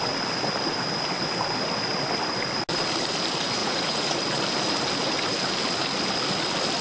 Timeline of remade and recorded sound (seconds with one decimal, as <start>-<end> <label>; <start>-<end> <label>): 0.0-3.6 recorded; 3.6-4.2 remade; 4.2-6.8 recorded